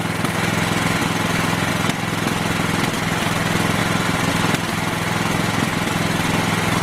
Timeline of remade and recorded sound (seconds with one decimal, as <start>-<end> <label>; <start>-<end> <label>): 0.0-6.8 recorded